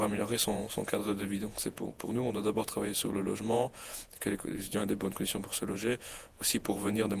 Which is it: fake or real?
fake